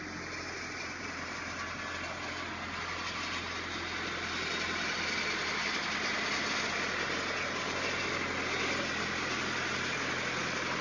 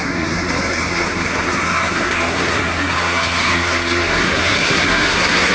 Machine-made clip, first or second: second